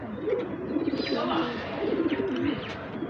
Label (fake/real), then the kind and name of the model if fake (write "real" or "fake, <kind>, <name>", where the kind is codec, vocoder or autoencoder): real